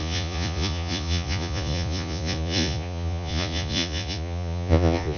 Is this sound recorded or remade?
remade